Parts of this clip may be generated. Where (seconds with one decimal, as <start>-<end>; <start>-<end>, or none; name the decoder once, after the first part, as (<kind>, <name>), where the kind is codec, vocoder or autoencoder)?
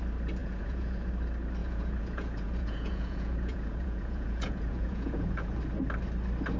0.4-1.1 (vocoder, Vocos); 1.6-5.6